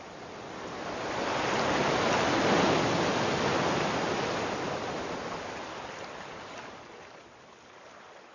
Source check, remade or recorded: recorded